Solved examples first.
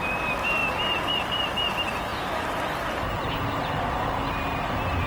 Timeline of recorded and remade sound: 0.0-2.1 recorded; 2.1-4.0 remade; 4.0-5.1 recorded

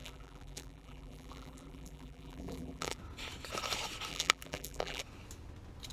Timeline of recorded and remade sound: 0.0-3.0 remade; 3.0-4.1 recorded; 4.1-5.0 remade; 5.0-5.9 recorded

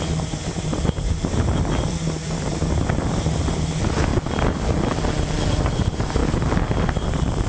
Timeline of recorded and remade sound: 0.0-4.1 remade; 4.1-5.5 recorded; 5.5-7.5 remade

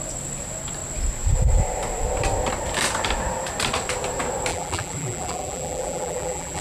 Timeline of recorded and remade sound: 0.0-4.5 recorded; 4.5-6.6 remade

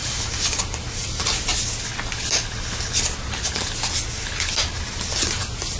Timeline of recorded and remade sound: 0.0-1.2 remade; 1.2-5.8 recorded

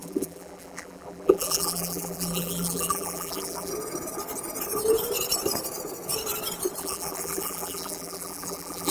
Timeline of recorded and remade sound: 0.0-3.7 remade; 3.7-6.8 recorded; 6.8-8.9 remade